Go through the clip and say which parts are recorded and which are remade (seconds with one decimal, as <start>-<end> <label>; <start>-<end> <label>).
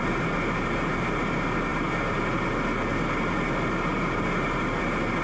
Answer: 0.0-5.2 recorded